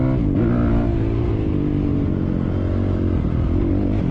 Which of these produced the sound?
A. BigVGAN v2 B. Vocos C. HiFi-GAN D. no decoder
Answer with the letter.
D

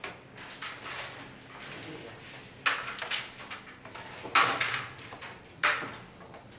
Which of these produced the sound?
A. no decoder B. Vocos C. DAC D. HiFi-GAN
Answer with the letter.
A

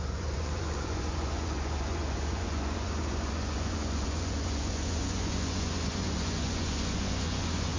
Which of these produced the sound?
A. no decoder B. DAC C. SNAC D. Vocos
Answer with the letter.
D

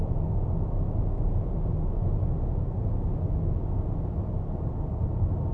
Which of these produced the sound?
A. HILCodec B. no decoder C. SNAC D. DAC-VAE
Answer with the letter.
B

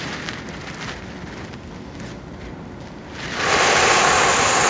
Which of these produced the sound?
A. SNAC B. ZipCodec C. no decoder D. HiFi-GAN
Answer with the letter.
C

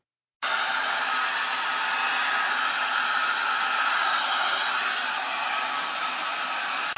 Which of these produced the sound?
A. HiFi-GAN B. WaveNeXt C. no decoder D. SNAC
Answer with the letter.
C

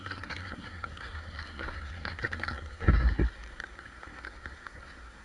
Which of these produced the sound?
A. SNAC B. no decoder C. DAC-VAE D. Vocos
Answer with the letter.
A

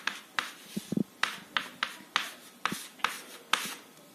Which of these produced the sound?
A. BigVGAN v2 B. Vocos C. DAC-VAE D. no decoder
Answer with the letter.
D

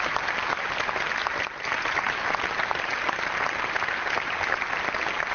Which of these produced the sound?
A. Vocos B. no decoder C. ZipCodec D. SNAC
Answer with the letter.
B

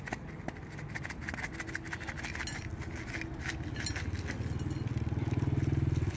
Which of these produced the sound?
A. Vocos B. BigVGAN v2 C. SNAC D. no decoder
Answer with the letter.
D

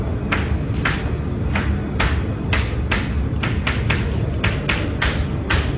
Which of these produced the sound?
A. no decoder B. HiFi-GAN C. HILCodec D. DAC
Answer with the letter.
A